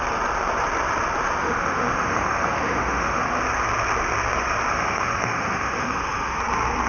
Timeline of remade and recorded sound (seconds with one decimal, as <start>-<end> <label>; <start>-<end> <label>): 0.0-1.4 recorded; 1.4-3.3 remade; 3.3-4.7 recorded; 4.7-6.4 remade; 6.4-6.9 recorded